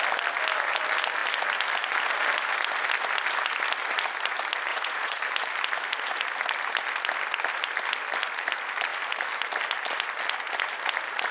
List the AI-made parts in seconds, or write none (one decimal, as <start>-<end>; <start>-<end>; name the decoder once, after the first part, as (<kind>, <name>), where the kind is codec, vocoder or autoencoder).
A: 4.7-5.2 (vocoder, Vocos)

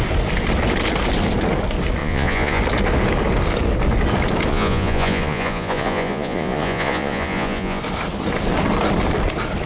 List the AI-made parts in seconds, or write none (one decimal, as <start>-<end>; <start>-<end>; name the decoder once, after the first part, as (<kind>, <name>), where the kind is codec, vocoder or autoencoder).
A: 2.0-2.6 (vocoder, Vocos); 4.5-7.8

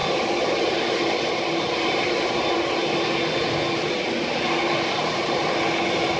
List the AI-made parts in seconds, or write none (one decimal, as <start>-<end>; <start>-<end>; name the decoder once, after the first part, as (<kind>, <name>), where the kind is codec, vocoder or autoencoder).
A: none

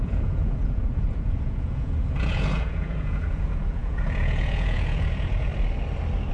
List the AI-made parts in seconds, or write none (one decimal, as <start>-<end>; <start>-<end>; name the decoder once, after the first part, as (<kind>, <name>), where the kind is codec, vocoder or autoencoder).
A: 0.0-5.5 (vocoder, Vocos)

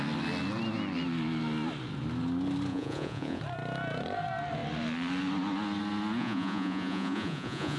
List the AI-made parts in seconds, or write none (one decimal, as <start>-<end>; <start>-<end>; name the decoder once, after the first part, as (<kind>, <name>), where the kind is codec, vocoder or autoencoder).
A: 2.7-3.4 (vocoder, Vocos); 6.2-7.8

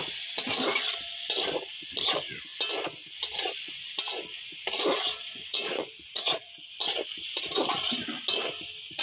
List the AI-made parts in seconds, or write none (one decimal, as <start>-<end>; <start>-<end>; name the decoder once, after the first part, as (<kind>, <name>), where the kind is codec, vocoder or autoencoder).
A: 5.2-6.5 (vocoder, Vocos)

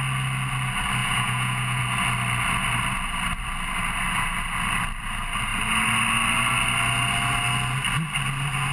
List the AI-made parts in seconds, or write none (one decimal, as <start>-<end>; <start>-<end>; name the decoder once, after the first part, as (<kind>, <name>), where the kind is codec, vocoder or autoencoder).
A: 1.0-1.8 (vocoder, Vocos)